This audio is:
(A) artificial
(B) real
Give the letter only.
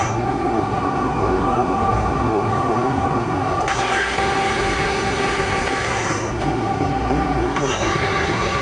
A